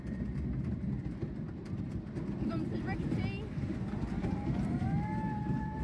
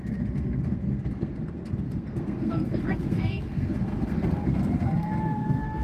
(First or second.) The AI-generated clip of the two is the second